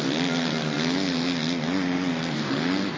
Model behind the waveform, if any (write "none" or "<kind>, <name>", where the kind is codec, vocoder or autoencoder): none